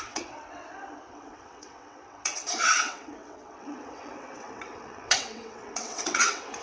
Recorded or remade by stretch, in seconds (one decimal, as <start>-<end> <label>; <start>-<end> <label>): 0.0-0.6 remade; 0.6-1.1 recorded; 1.1-6.6 remade